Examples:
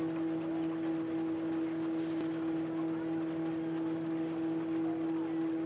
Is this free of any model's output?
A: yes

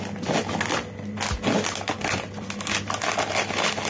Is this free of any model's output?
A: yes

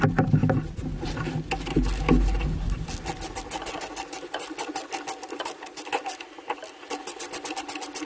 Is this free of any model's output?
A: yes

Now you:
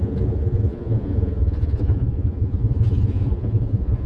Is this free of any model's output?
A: no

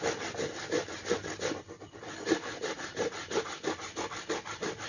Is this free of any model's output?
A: yes